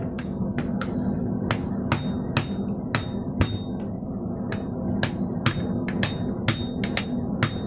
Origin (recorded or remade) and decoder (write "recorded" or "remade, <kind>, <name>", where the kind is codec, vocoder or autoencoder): recorded